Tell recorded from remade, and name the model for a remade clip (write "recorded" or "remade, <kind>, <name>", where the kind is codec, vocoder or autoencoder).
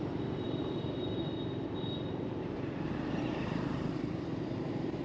remade, vocoder, BigVGAN v2